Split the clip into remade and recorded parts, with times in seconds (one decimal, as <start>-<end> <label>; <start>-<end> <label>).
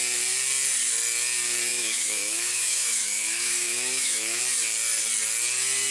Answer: 0.0-1.7 recorded; 1.7-4.4 remade; 4.4-5.9 recorded